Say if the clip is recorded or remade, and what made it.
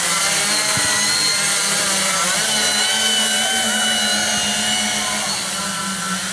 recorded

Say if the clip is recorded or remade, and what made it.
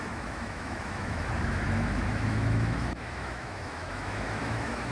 remade, autoencoder, DAC-VAE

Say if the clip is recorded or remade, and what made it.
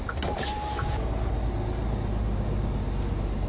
recorded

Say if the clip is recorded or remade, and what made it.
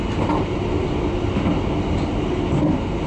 recorded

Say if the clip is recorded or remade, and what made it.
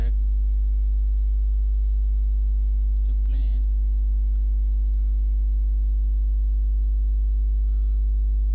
remade, autoencoder, DAC-VAE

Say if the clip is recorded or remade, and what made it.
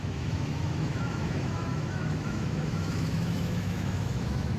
remade, autoencoder, DAC-VAE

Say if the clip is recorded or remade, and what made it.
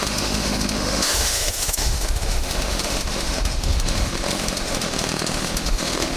remade, autoencoder, DAC-VAE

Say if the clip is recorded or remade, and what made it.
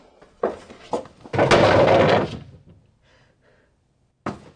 recorded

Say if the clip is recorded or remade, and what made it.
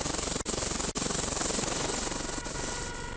recorded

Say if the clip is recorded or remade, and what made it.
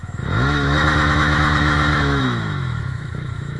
remade, autoencoder, DAC-VAE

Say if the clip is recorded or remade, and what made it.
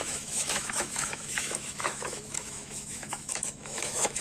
remade, autoencoder, DAC-VAE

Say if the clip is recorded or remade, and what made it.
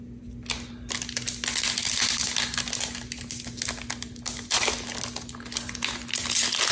recorded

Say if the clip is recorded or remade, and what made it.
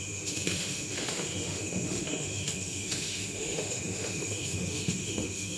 remade, autoencoder, DAC-VAE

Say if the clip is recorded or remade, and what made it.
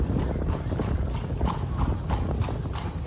recorded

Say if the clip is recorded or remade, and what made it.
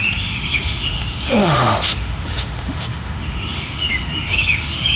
remade, autoencoder, DAC-VAE